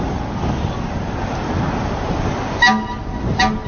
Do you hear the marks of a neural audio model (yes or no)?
no